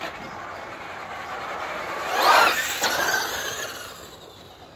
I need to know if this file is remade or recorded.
recorded